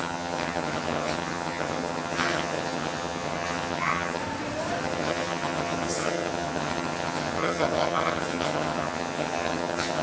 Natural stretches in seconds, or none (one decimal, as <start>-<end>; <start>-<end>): 4.2-4.8